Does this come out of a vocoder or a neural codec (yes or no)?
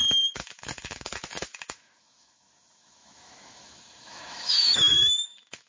yes